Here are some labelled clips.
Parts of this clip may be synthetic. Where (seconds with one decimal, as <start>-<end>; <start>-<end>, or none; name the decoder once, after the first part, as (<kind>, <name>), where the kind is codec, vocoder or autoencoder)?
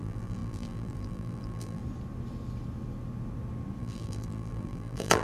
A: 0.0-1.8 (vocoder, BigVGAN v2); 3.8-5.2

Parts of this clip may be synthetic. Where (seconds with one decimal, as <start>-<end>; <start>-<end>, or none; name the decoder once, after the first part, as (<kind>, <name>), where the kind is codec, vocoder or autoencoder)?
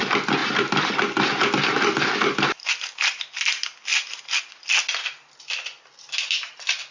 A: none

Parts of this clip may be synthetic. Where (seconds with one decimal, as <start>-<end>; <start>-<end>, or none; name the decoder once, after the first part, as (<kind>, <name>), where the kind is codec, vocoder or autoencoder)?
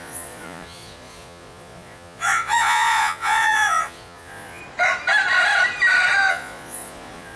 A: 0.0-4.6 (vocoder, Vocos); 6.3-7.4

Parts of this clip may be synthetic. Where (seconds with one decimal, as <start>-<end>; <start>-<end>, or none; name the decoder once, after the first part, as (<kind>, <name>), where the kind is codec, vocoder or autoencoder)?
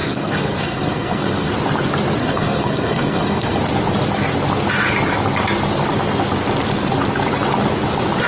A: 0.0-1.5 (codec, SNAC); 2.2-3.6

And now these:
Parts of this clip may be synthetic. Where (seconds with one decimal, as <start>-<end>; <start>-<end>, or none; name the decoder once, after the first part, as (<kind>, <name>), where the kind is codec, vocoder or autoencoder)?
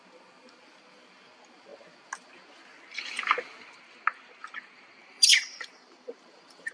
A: 5.0-6.7 (vocoder, BigVGAN v2)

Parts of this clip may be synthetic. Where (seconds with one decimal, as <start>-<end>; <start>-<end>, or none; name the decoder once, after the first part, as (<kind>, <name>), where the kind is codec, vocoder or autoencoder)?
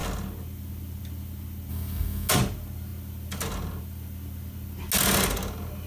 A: 1.7-2.3 (codec, SNAC)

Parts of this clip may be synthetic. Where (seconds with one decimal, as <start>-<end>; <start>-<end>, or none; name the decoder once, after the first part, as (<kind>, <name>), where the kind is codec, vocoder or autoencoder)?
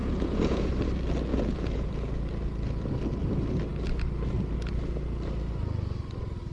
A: 0.0-0.7 (vocoder, Vocos); 1.3-1.9